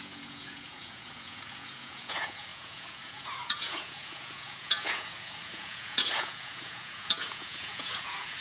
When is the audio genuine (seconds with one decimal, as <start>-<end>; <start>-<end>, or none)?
none

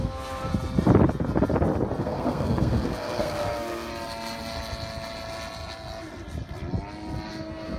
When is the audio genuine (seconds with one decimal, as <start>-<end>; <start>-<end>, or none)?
0.5-2.0; 3.9-7.3

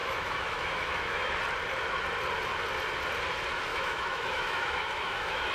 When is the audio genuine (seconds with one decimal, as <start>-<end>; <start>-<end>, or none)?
1.3-3.7

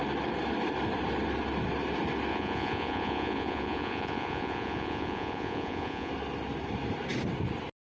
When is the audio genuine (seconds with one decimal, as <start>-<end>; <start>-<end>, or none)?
0.0-2.3; 6.1-7.9